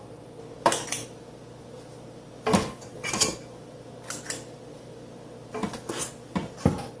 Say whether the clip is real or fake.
real